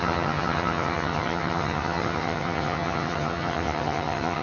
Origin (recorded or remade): remade